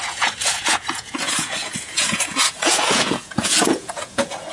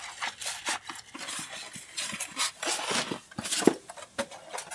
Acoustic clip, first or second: second